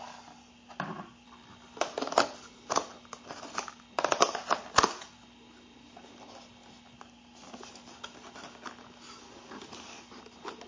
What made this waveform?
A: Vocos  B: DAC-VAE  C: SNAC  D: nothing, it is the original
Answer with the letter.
D